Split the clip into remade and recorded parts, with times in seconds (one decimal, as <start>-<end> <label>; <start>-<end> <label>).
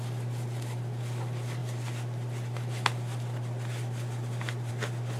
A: 0.0-5.2 recorded